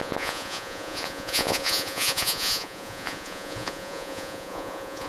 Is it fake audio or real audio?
fake